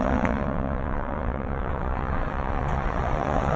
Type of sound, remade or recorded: remade